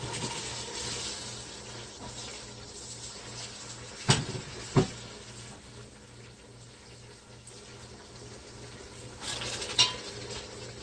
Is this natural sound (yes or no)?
yes